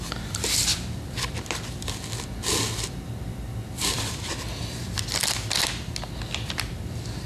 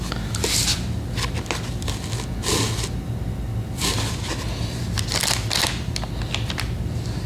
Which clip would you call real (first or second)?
second